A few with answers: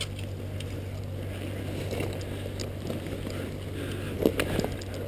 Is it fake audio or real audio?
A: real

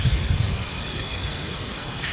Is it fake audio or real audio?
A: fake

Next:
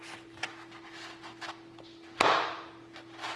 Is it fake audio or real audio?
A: real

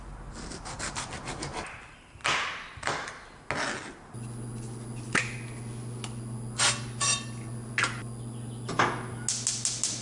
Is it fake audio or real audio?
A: real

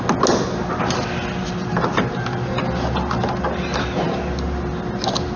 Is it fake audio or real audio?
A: real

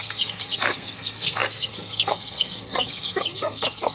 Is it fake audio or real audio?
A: fake